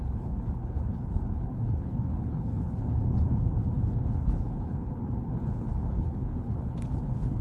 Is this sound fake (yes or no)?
yes